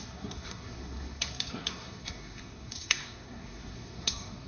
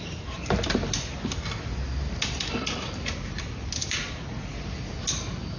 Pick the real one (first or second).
second